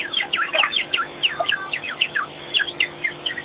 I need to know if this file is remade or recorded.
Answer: remade